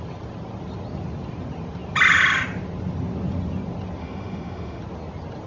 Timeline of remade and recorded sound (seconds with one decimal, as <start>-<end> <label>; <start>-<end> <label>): 0.0-4.0 recorded; 4.0-4.8 remade; 4.8-5.5 recorded